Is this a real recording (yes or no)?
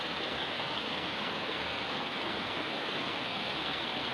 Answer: no